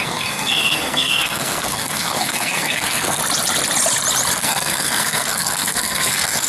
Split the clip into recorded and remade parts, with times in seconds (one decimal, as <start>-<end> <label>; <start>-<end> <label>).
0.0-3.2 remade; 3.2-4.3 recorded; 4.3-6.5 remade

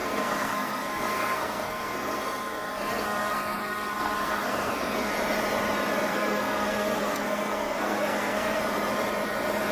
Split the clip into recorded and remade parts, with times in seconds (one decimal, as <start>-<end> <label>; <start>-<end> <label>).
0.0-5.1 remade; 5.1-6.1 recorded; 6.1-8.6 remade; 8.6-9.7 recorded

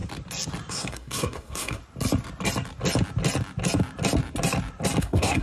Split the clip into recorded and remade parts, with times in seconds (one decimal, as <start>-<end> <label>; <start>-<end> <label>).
0.0-0.7 recorded; 0.7-1.8 remade; 1.8-5.0 recorded; 5.0-5.4 remade

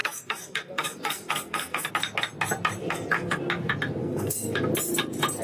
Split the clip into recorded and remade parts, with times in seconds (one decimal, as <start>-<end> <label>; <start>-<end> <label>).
0.0-1.9 remade; 1.9-2.8 recorded; 2.8-3.4 remade; 3.4-4.0 recorded; 4.0-4.6 remade; 4.6-5.4 recorded